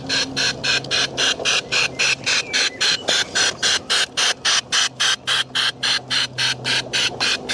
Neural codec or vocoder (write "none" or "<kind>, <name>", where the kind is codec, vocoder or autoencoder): none